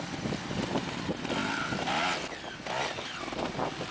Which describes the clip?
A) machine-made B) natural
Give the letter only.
B